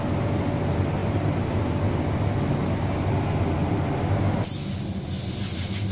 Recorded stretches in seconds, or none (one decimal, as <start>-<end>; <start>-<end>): 0.0-5.9